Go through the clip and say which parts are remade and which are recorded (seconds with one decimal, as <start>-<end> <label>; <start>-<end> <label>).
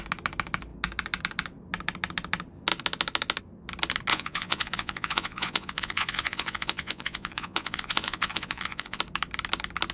0.0-4.1 recorded; 4.1-9.0 remade; 9.0-9.9 recorded